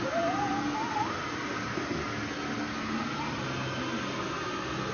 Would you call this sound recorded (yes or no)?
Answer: yes